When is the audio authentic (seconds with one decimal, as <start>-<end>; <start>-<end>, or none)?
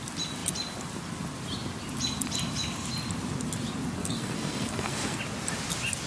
0.0-4.0; 5.2-6.1